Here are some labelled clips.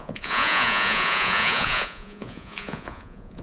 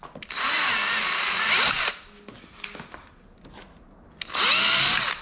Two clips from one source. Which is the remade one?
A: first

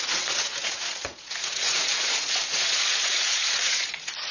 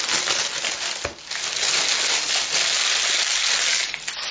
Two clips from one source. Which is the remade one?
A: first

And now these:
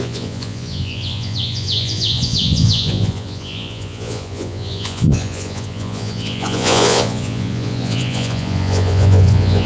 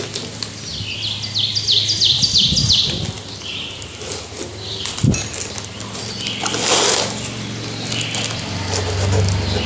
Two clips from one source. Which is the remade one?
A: first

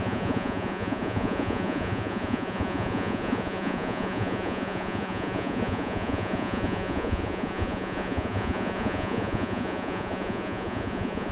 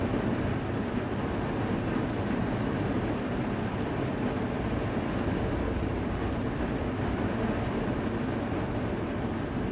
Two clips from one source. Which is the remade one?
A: first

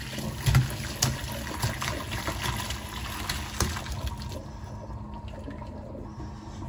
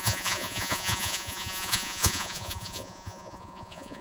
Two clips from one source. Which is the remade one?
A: second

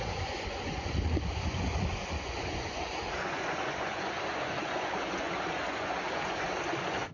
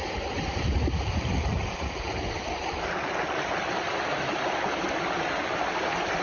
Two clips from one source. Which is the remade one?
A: first